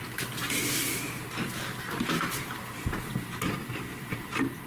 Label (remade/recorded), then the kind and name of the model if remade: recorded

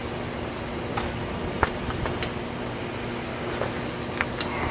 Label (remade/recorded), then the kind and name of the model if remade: recorded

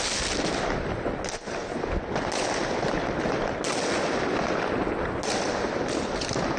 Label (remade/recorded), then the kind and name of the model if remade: recorded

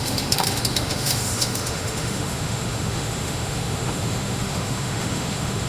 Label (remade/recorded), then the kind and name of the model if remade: remade, autoencoder, DAC-VAE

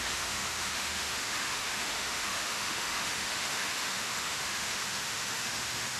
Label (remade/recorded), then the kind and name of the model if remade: remade, autoencoder, DAC-VAE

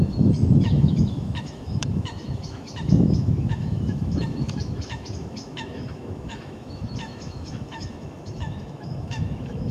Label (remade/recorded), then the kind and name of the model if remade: remade, autoencoder, DAC-VAE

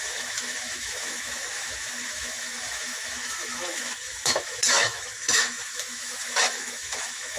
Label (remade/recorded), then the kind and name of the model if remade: remade, autoencoder, DAC-VAE